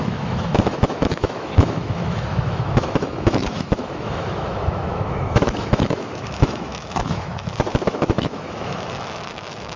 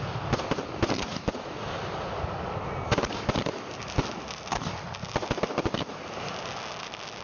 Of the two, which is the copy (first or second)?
first